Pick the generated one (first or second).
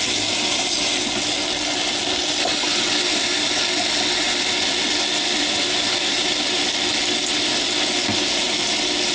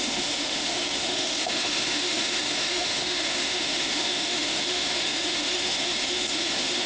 second